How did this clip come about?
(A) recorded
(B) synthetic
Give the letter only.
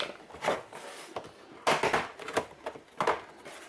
A